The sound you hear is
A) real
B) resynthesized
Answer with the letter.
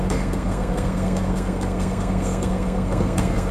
B